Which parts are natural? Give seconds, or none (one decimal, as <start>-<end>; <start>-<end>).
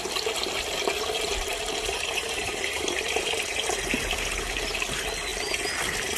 0.0-1.5; 4.1-6.2